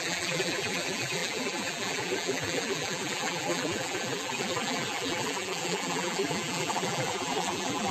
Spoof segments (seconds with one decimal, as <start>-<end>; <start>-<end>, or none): 0.0-7.9

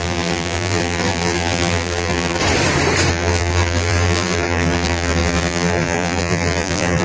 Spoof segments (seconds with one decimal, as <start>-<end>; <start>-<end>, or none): 0.0-2.4; 3.1-7.0

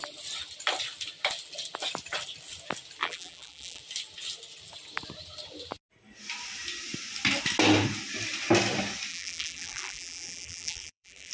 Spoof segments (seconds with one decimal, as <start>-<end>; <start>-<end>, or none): 3.0-3.8; 9.1-11.3

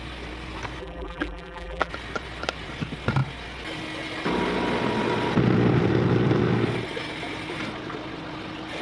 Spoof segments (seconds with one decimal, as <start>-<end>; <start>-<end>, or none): 0.8-1.9

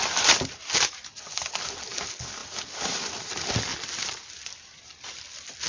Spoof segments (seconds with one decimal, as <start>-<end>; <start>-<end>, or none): 0.0-3.7; 4.2-5.7

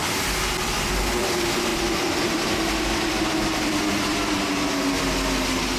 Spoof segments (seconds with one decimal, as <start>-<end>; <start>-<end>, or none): 1.7-4.5

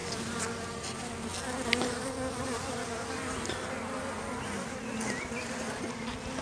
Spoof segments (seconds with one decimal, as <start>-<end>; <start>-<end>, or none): 0.8-1.3; 4.1-6.4